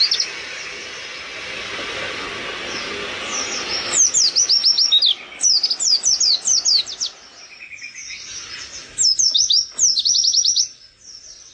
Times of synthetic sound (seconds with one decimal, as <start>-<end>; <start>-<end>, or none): none